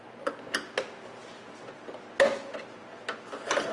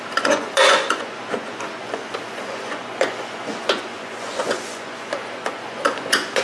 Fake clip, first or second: second